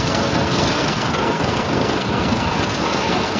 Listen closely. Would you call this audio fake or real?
fake